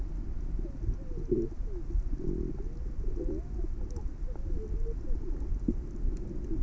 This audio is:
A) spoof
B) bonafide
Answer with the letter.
B